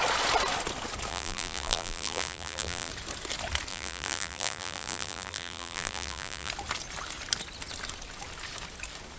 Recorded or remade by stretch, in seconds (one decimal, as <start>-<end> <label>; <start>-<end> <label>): 0.0-1.1 recorded; 1.1-2.9 remade; 2.9-3.7 recorded; 3.7-6.5 remade; 6.5-9.2 recorded